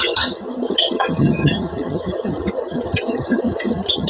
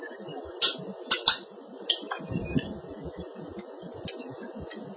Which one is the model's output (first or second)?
first